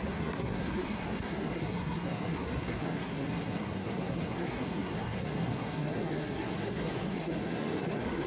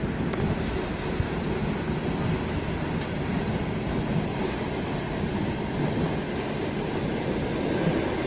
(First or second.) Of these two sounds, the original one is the second